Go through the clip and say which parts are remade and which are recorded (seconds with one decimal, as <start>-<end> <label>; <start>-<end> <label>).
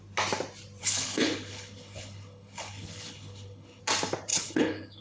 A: 0.0-0.8 recorded; 0.8-3.8 remade; 3.8-4.3 recorded; 4.3-5.0 remade